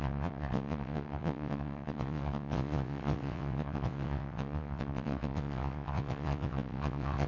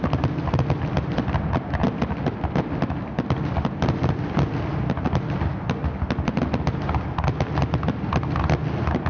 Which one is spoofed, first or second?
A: first